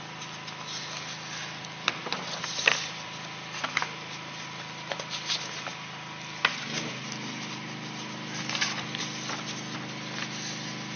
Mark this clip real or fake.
real